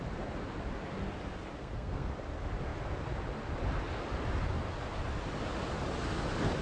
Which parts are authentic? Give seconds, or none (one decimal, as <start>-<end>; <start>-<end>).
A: 0.0-1.6; 2.1-6.6